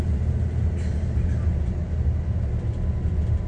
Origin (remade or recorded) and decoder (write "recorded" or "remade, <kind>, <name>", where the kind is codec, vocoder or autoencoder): recorded